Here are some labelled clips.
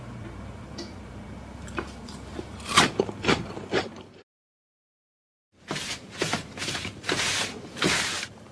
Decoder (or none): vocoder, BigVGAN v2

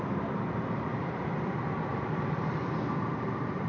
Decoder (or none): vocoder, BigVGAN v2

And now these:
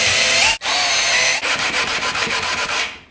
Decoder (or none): none